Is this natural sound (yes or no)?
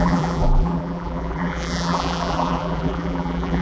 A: no